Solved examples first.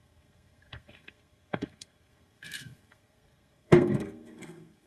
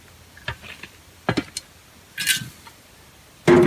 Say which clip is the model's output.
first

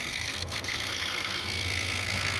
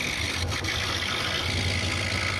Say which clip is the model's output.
first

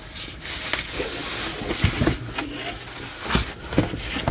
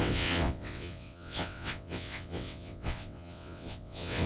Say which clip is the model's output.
second